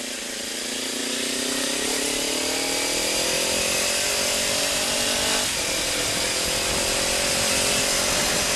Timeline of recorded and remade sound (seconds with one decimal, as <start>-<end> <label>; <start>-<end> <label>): 0.0-8.6 recorded